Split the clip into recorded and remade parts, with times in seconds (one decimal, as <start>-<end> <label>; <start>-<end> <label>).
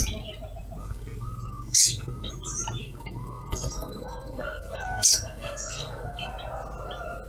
0.0-0.8 recorded; 0.8-2.3 remade; 2.3-2.8 recorded; 2.8-6.3 remade; 6.3-7.3 recorded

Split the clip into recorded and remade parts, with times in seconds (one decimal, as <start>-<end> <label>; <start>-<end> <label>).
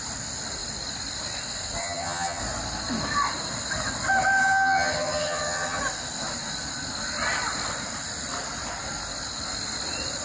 0.0-1.8 recorded; 1.8-2.4 remade; 2.4-4.4 recorded; 4.4-5.8 remade; 5.8-10.2 recorded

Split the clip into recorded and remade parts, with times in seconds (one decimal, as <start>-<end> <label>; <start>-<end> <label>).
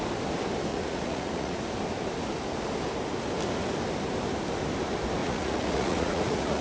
0.0-0.7 recorded; 0.7-1.6 remade; 1.6-5.2 recorded; 5.2-6.6 remade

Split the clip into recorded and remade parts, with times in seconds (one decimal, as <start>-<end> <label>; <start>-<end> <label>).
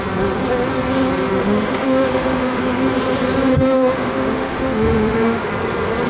0.0-1.4 recorded; 1.4-2.6 remade; 2.6-3.5 recorded; 3.5-5.5 remade; 5.5-6.1 recorded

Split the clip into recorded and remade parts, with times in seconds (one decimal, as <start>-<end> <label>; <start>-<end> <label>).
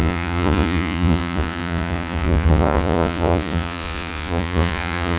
0.0-5.2 remade